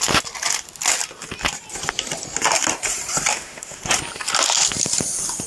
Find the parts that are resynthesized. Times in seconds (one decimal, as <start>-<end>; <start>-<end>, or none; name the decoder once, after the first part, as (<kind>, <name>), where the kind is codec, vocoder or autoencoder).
3.3-3.8 (autoencoder, DAC-VAE)